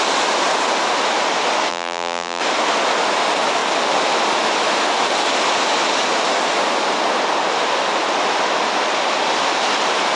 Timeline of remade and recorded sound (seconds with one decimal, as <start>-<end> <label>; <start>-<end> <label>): 0.0-1.7 recorded; 1.7-2.4 remade; 2.4-10.2 recorded